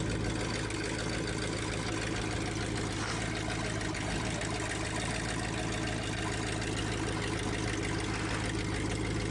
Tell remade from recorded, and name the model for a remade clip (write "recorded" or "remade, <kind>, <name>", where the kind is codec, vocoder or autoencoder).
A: recorded